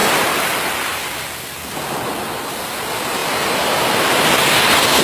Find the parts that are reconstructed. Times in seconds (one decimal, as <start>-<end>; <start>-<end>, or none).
0.0-1.3; 3.2-5.0